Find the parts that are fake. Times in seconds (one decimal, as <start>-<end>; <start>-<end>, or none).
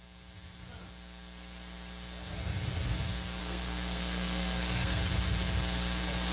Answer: 3.4-5.0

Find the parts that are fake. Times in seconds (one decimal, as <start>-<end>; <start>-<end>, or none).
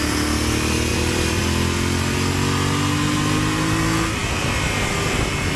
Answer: 0.9-1.4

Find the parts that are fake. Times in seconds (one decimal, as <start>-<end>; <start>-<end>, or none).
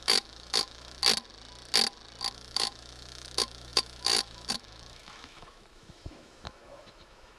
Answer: 0.0-1.0; 2.3-7.4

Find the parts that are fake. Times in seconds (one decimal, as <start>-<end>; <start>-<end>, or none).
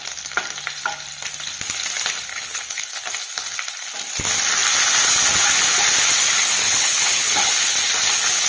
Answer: 2.3-3.0; 6.6-7.5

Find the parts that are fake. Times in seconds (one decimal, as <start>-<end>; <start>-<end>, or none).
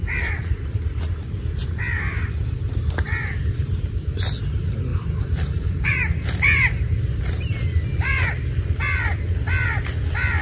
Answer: 0.0-0.8; 4.9-5.9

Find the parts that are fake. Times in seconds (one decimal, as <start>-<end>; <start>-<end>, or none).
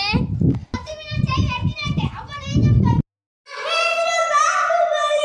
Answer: none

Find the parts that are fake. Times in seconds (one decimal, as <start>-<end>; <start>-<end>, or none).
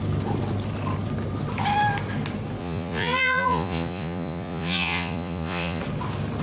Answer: 2.6-5.8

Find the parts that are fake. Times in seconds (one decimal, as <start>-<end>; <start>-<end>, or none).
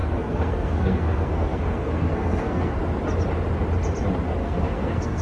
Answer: 0.0-2.8; 4.4-5.2